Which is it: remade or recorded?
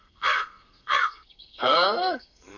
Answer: remade